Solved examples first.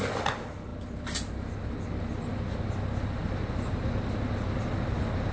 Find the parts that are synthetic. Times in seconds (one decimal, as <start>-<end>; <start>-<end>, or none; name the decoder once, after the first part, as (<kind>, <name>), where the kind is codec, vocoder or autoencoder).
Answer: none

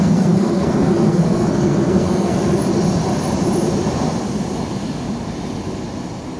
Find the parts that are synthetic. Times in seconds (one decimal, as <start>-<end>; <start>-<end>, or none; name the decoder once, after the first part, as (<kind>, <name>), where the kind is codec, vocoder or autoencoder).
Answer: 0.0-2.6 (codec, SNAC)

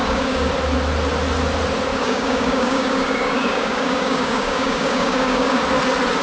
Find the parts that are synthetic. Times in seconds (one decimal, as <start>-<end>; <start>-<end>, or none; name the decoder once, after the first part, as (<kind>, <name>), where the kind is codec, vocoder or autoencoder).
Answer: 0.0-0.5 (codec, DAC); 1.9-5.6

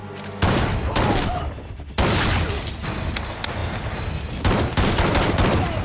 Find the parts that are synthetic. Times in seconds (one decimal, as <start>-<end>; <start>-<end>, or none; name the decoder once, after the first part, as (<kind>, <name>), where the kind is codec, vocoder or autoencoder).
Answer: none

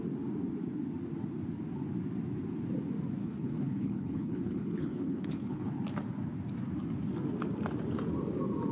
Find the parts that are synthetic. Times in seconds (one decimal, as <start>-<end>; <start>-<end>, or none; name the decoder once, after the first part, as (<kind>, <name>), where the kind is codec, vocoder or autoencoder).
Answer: 3.2-5.7 (codec, HILCodec)

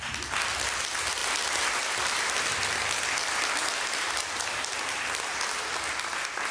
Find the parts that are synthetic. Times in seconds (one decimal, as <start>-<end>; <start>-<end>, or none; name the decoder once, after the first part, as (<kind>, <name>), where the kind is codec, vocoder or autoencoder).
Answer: none